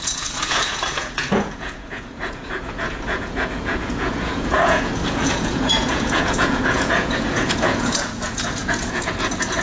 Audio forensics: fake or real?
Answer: fake